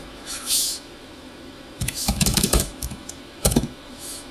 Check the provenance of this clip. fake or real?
fake